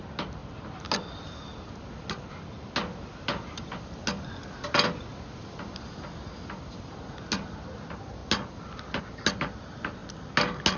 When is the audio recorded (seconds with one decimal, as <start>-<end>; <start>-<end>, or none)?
0.0-10.8